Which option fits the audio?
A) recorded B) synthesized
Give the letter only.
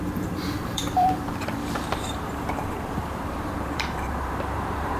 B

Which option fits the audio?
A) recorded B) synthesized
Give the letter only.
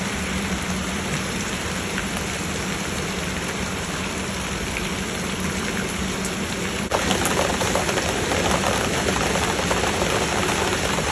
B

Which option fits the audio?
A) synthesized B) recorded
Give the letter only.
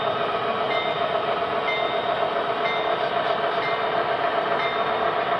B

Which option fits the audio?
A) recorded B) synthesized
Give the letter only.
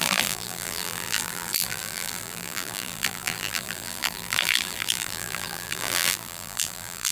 B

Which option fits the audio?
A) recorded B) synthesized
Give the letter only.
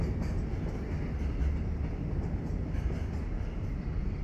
A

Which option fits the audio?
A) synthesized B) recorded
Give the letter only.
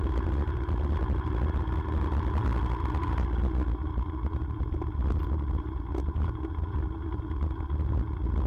B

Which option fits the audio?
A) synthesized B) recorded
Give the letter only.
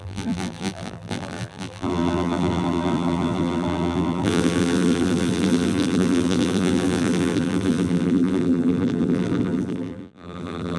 A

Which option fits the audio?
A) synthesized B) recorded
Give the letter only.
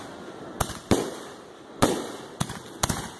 B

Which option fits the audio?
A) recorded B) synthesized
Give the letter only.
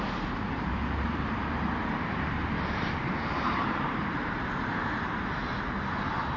B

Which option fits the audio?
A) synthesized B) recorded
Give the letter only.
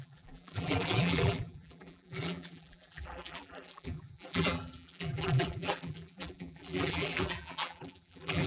A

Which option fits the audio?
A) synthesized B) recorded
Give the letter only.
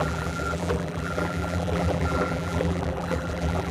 A